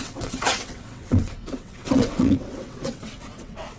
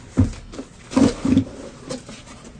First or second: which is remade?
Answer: first